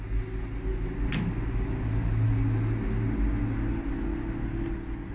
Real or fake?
real